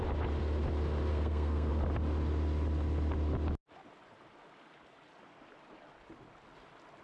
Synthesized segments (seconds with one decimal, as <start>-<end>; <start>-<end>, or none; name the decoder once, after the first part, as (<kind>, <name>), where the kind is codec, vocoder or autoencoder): 1.1-1.7 (codec, SNAC)